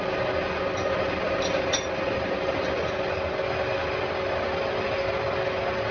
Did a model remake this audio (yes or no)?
no